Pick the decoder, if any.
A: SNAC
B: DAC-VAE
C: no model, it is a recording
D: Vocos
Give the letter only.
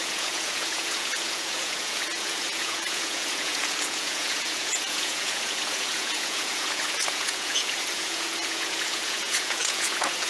D